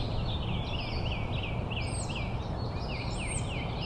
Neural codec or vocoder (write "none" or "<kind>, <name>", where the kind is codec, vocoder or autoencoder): none